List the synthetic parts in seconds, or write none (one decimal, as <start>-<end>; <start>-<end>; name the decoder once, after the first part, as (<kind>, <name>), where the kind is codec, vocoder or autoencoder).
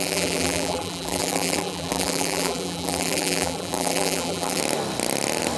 0.0-4.6 (vocoder, BigVGAN v2)